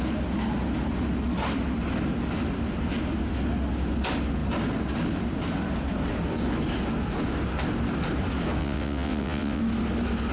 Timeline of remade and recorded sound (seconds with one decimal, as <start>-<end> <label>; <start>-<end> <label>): 0.0-8.6 recorded; 8.6-9.6 remade; 9.6-10.3 recorded